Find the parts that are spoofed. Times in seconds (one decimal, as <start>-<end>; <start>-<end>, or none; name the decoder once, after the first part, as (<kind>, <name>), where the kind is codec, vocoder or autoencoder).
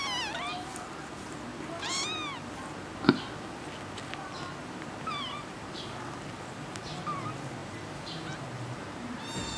4.6-6.2 (vocoder, BigVGAN v2); 7.6-9.6